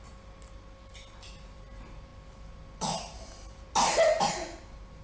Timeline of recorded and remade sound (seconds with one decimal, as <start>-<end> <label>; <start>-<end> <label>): 0.0-5.0 recorded